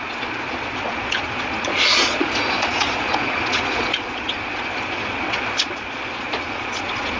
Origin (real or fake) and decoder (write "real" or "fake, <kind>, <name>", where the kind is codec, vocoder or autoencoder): fake, vocoder, Vocos